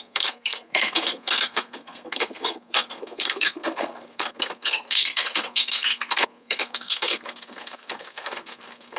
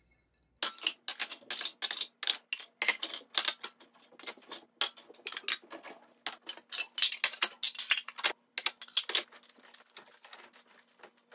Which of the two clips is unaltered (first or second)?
second